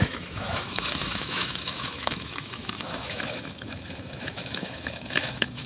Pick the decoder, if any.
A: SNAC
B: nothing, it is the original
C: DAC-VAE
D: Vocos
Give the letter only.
C